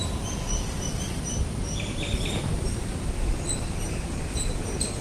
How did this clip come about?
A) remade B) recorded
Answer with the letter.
B